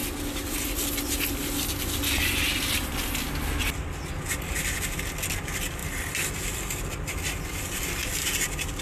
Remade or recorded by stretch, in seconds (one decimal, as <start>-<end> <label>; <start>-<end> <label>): 0.0-8.8 recorded